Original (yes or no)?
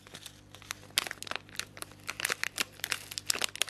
yes